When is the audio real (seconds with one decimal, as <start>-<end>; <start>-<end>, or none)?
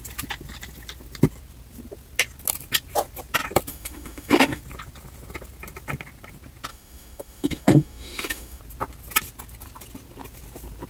0.0-3.7; 4.6-6.7; 8.6-10.9